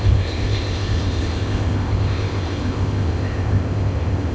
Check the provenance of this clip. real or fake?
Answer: fake